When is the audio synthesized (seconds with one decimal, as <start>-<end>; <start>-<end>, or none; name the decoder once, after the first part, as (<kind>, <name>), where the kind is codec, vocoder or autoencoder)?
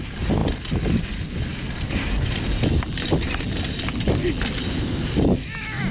none